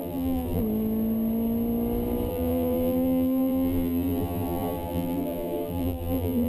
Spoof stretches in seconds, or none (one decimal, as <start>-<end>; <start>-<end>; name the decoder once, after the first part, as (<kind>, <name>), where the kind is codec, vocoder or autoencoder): 0.0-0.6 (vocoder, BigVGAN v2); 2.3-6.5